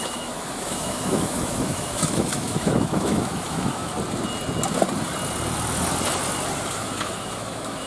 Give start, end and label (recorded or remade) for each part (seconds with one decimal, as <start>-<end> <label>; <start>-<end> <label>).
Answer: 0.0-3.9 remade; 3.9-6.7 recorded; 6.7-7.9 remade